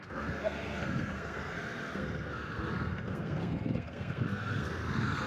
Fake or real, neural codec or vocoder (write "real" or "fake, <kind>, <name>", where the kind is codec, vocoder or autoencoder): fake, codec, SNAC